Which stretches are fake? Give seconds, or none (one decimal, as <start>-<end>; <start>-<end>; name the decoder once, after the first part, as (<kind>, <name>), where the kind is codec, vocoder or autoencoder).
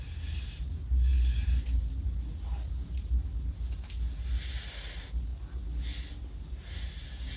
none